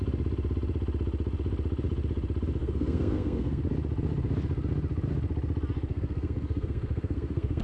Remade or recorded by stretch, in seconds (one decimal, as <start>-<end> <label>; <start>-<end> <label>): 0.0-2.6 recorded; 2.6-3.6 remade; 3.6-5.9 recorded; 5.9-7.6 remade